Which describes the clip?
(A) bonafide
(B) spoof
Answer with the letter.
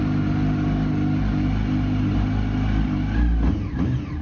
A